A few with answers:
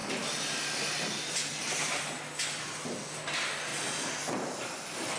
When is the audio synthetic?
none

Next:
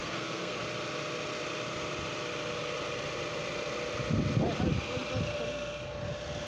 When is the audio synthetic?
0.0-0.6

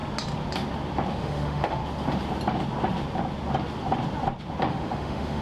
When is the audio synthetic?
1.1-1.8; 4.7-5.4